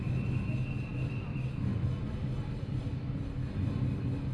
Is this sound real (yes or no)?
yes